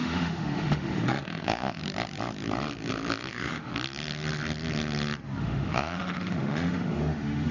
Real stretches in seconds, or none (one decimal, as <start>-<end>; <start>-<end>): 1.8-3.3; 3.7-5.4